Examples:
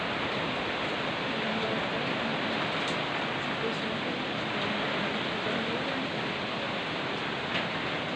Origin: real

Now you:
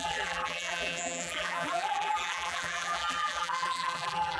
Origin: fake